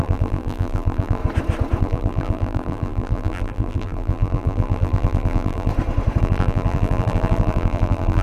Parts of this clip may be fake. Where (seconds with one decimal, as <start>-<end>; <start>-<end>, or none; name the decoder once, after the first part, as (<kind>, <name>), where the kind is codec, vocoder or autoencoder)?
0.0-1.2 (vocoder, BigVGAN v2); 1.8-5.7; 6.2-8.2